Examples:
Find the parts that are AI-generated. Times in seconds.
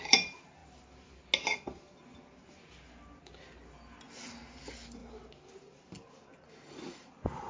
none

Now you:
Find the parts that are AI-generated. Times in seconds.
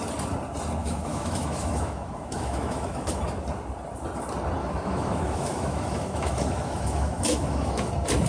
0.8-3.2 (autoencoder, DAC-VAE); 4.6-7.9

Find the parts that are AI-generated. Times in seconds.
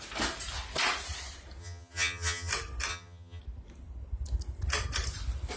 1.6-2.5 (vocoder, HiFi-GAN); 2.9-3.4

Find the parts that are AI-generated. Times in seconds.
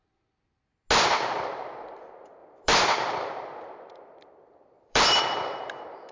2.4-5.2 (vocoder, BigVGAN v2)